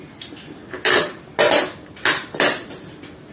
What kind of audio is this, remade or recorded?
recorded